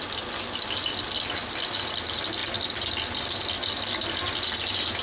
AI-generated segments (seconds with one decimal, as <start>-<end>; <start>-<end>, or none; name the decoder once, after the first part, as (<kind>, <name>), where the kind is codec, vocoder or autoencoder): none